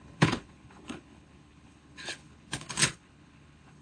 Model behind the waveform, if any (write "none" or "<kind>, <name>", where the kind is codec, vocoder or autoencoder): codec, HILCodec